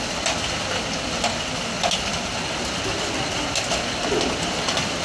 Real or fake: real